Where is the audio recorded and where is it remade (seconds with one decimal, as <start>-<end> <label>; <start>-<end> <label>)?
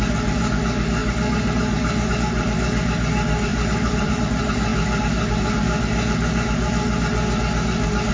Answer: 0.0-3.5 recorded; 3.5-4.1 remade; 4.1-8.1 recorded